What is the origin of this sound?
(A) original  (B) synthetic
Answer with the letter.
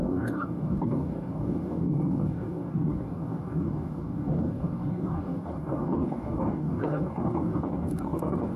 B